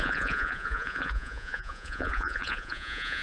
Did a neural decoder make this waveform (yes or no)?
yes